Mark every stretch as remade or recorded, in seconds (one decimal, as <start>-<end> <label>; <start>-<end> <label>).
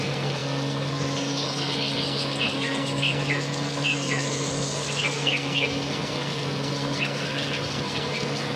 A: 0.0-8.6 remade